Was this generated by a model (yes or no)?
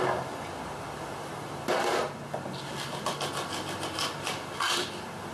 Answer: no